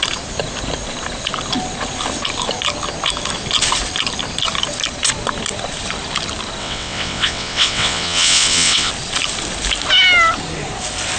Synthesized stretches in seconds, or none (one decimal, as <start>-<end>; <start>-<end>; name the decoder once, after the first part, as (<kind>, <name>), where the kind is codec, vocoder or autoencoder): 6.6-8.9 (vocoder, WaveNeXt)